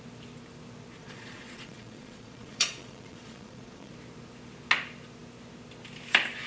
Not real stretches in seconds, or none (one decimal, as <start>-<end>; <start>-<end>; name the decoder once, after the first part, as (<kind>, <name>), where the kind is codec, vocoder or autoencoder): 1.0-3.9 (vocoder, Vocos)